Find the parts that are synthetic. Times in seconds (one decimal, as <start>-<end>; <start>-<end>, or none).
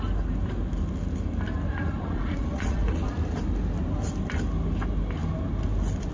1.7-3.2